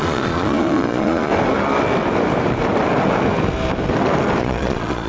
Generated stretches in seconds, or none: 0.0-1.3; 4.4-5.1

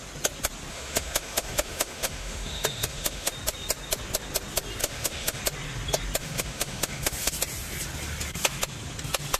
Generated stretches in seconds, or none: 0.7-3.3; 4.8-5.4; 6.2-7.3

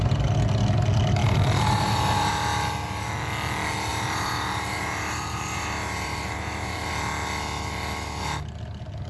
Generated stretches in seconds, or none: 1.2-2.3; 3.9-6.9

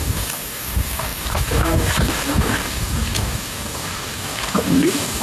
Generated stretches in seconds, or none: 0.0-5.2

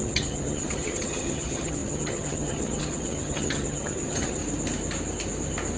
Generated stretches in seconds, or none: 0.0-4.4

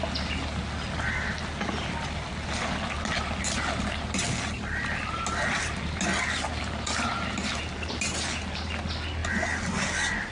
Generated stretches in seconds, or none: none

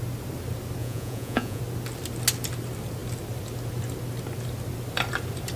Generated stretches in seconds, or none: 0.8-1.6

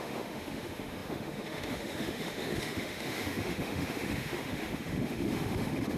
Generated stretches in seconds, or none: 0.0-6.0